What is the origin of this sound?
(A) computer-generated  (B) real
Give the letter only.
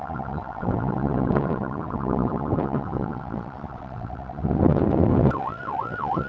A